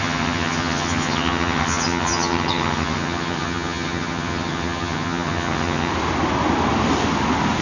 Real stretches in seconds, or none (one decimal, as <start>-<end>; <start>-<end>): 5.9-7.6